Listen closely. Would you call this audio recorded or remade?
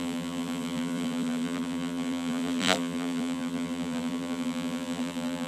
remade